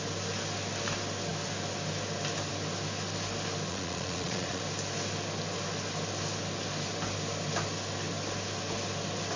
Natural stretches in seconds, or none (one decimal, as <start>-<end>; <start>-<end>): 0.0-3.7; 4.6-9.4